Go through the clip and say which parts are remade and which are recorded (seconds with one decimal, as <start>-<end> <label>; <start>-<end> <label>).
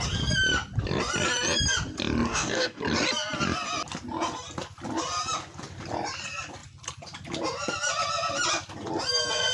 0.0-2.3 recorded; 2.3-2.8 remade; 2.8-9.5 recorded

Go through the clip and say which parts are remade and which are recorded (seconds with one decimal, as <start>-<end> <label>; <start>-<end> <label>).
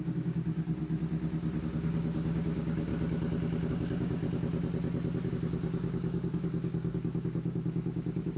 0.0-0.8 remade; 0.8-1.6 recorded; 1.6-2.9 remade; 2.9-3.7 recorded; 3.7-4.2 remade; 4.2-5.3 recorded; 5.3-8.4 remade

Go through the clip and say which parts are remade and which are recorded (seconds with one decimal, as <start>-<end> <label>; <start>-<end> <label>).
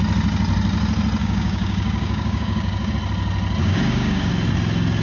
0.0-1.2 recorded; 1.2-2.9 remade; 2.9-3.6 recorded; 3.6-4.3 remade; 4.3-5.0 recorded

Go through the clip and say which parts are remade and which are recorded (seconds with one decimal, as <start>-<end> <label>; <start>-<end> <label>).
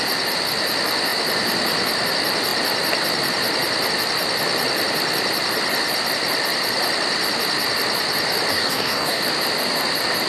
0.0-8.5 recorded; 8.5-9.2 remade; 9.2-10.3 recorded